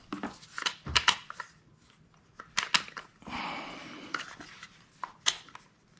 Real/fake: real